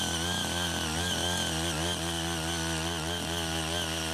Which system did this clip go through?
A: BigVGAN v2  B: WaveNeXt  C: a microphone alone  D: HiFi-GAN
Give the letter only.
C